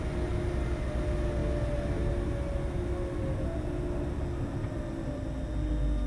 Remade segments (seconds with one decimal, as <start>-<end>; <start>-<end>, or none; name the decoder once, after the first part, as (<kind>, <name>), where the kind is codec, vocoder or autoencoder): none